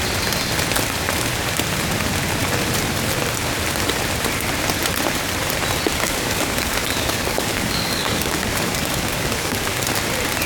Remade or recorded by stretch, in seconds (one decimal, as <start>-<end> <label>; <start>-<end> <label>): 0.0-5.9 recorded; 5.9-9.8 remade; 9.8-10.5 recorded